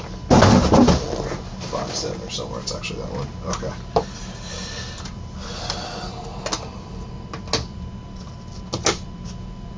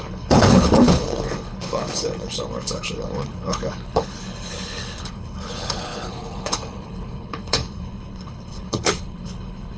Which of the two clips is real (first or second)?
first